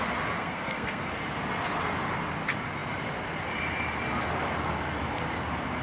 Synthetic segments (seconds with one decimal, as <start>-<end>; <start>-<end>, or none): 0.4-1.1